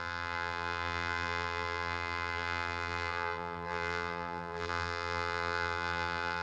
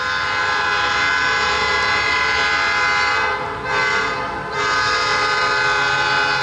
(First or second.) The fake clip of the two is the first